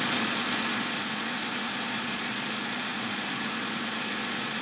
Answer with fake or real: fake